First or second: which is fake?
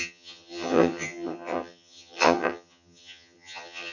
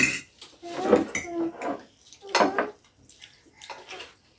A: first